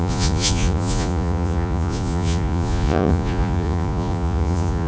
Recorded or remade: remade